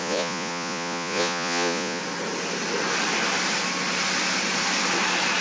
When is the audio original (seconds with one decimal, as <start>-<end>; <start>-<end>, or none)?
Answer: 2.0-5.4